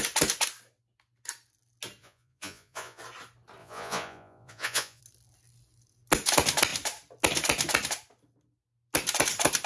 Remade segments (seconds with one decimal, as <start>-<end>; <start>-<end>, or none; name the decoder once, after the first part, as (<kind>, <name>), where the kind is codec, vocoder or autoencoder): 2.0-3.0 (vocoder, Vocos); 3.6-5.0